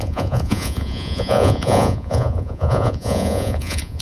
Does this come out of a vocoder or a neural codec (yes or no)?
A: yes